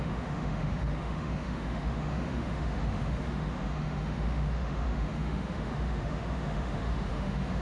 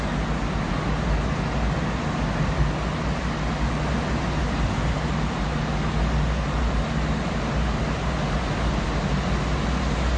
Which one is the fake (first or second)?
first